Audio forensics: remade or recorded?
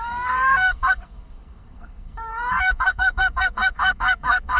remade